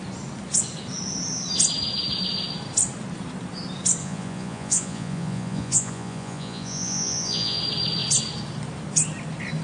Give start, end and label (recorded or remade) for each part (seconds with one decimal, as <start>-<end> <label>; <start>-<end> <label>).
0.0-4.0 recorded; 4.0-7.6 remade; 7.6-9.6 recorded